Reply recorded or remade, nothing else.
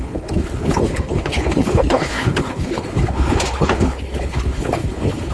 remade